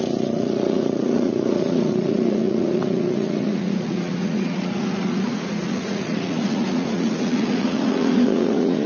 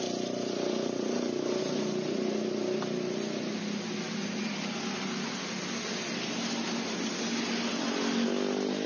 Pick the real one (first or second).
second